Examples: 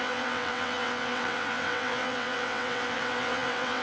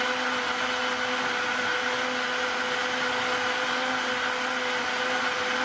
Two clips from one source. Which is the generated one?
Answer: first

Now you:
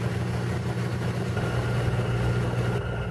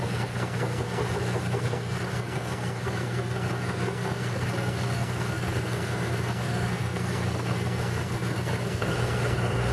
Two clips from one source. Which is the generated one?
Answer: second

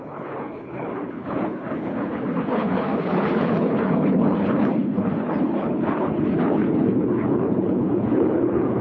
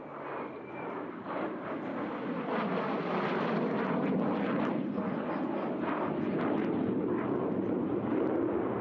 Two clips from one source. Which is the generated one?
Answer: first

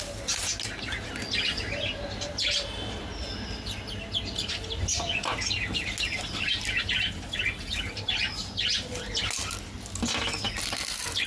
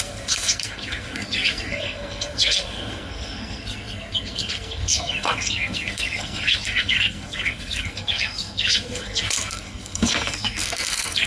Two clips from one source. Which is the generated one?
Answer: second